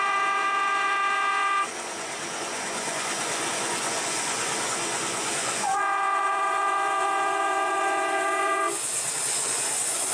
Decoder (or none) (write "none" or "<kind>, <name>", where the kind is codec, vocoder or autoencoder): vocoder, Vocos